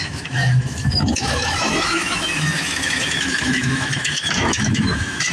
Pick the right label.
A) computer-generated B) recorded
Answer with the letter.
A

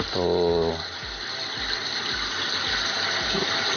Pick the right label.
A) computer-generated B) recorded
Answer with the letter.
B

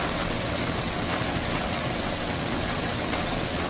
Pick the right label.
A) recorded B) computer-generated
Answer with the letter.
B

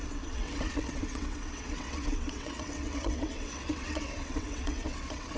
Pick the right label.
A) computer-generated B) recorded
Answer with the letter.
A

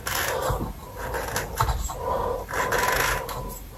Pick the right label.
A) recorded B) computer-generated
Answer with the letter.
A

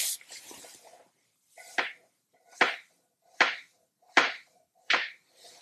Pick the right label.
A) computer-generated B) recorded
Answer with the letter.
A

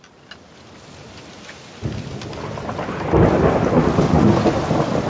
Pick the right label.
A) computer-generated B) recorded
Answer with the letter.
B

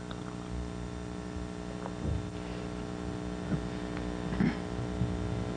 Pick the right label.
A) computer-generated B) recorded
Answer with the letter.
B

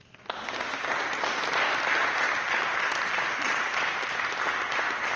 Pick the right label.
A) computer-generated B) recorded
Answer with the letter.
B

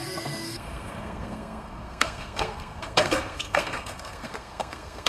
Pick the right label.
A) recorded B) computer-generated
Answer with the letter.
B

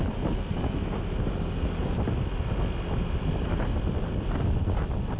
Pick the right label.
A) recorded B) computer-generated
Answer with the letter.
A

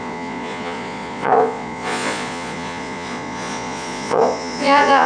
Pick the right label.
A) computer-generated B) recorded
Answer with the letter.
A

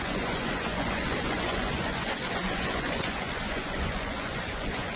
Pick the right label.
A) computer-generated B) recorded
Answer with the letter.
A